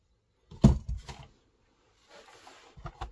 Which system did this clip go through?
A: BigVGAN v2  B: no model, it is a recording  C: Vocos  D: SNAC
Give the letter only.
B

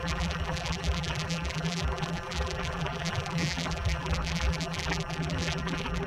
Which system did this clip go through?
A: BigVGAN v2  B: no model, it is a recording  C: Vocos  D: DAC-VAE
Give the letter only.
A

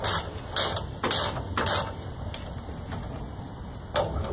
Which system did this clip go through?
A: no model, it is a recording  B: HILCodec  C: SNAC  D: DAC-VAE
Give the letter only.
A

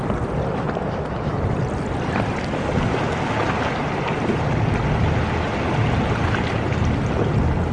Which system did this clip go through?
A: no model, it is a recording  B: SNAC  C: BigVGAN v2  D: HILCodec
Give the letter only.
A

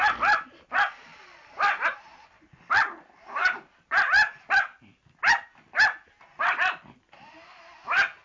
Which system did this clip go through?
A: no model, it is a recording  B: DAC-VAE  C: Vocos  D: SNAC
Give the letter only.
A